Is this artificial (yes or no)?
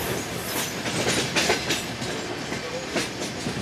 no